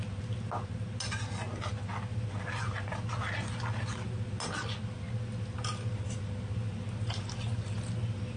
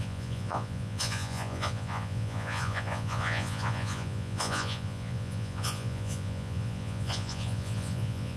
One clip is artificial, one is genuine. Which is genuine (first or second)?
first